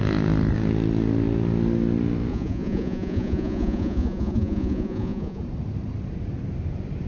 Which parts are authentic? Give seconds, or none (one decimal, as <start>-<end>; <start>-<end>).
0.0-2.3; 5.4-7.1